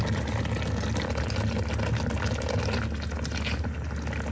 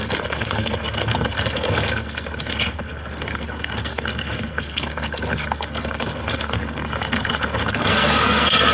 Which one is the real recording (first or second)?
first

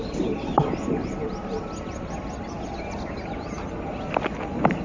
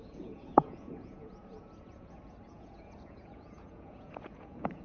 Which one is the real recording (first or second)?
first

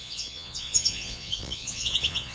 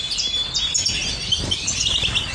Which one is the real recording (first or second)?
second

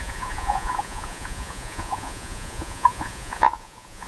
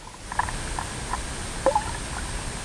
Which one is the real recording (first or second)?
second